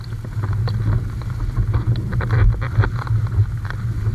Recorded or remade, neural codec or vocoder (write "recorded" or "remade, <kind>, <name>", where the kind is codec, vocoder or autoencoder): recorded